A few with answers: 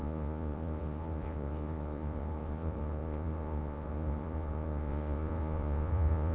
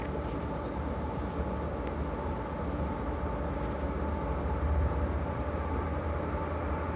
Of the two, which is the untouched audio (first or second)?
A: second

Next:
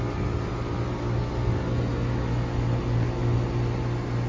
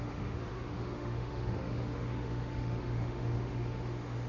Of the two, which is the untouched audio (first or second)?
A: first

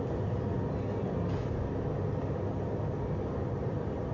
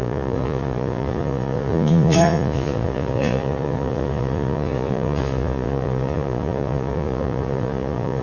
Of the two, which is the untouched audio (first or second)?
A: first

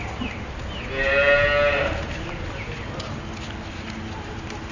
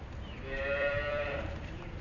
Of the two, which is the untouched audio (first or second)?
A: first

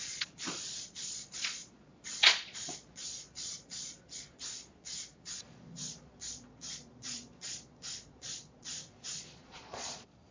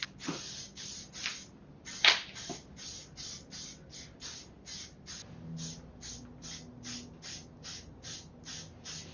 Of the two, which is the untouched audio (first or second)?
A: second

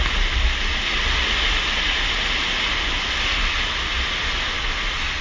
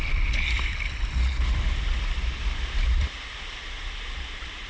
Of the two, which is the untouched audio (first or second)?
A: first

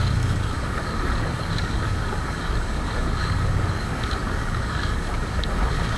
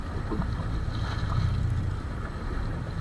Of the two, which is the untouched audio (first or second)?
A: second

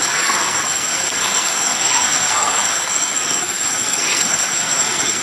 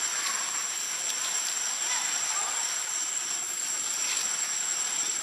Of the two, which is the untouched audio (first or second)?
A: second